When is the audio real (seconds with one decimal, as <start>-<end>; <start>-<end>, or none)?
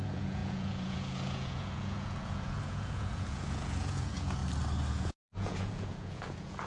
4.4-4.9